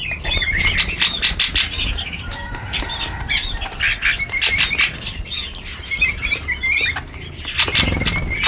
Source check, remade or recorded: recorded